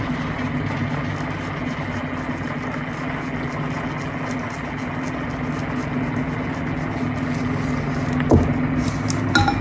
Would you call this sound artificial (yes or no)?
no